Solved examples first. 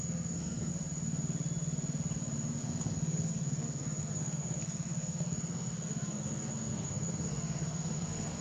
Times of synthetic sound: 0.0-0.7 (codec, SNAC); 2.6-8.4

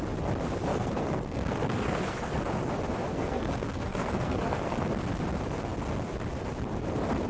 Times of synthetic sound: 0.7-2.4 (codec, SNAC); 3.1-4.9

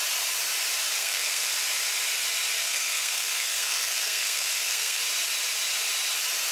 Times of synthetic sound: 1.0-1.5 (codec, SNAC); 2.6-5.0